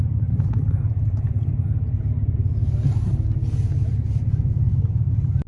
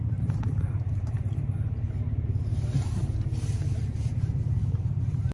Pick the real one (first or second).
first